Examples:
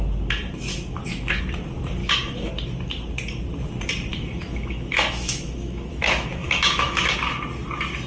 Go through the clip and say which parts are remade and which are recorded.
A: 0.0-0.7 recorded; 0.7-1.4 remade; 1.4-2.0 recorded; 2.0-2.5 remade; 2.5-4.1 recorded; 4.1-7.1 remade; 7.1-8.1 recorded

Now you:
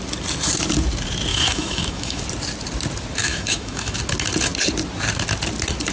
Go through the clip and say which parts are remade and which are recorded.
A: 0.0-1.3 recorded; 1.3-2.2 remade; 2.2-3.2 recorded; 3.2-4.0 remade; 4.0-5.9 recorded